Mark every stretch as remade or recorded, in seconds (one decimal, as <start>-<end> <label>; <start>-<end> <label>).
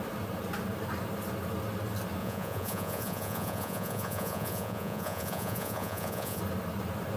0.0-2.2 recorded; 2.2-6.4 remade; 6.4-7.2 recorded